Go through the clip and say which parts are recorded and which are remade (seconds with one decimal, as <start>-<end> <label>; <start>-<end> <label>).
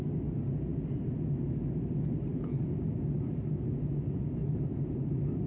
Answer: 0.0-4.4 recorded; 4.4-5.5 remade